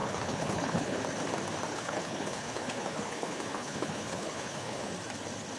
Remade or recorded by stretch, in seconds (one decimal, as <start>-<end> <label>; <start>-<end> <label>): 0.0-1.0 remade; 1.0-1.7 recorded; 1.7-4.9 remade; 4.9-5.6 recorded